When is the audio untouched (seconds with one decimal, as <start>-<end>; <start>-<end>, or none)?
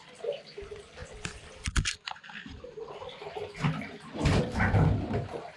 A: 0.0-1.0; 4.4-5.6